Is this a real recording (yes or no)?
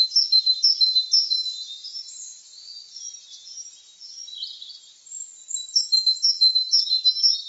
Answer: yes